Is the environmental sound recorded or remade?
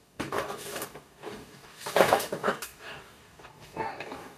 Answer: remade